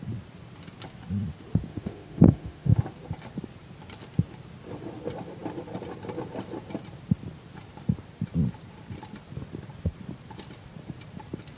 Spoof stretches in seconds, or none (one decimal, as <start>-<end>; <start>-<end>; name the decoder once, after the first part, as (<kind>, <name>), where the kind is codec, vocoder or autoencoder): 1.7-2.8 (autoencoder, DAC-VAE)